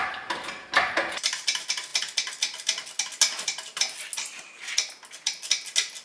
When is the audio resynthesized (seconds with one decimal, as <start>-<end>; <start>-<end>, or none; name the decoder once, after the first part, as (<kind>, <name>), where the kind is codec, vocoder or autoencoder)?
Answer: none